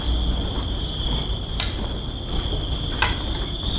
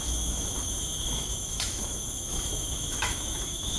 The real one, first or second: first